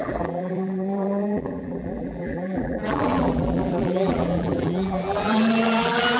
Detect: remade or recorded remade